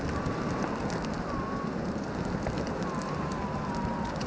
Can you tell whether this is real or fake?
real